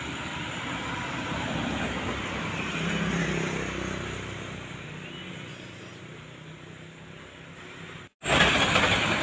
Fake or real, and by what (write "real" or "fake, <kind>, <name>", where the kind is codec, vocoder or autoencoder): real